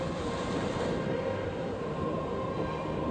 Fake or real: fake